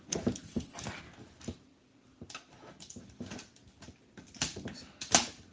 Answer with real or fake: real